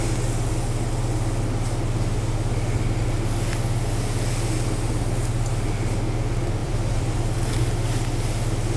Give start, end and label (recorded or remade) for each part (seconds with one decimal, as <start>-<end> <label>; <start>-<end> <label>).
0.0-6.6 recorded; 6.6-7.5 remade; 7.5-8.8 recorded